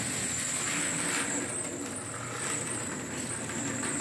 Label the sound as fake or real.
real